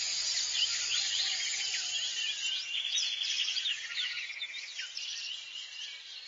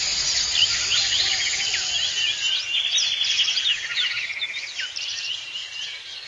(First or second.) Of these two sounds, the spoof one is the first